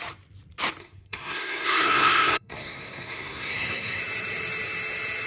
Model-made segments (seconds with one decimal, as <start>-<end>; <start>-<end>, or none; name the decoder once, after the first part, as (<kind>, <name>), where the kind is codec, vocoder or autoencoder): 0.8-4.0 (codec, SNAC)